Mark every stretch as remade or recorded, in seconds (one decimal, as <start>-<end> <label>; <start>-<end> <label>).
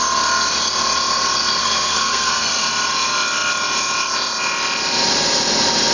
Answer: 0.0-1.6 recorded; 1.6-2.5 remade; 2.5-5.9 recorded